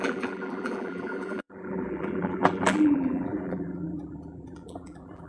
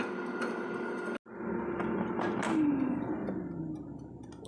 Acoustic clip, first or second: second